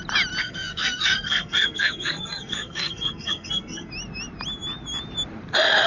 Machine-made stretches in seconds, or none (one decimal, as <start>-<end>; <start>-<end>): 0.4-3.9